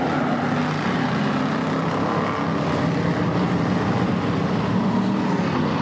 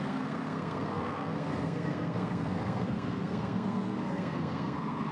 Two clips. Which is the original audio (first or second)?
first